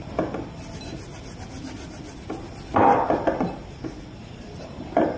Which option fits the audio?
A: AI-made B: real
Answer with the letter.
B